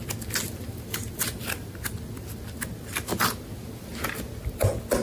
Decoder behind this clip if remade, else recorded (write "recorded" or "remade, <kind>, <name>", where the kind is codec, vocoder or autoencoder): recorded